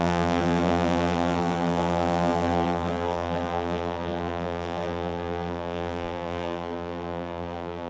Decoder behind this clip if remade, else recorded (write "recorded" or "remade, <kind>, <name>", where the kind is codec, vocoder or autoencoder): remade, vocoder, BigVGAN v2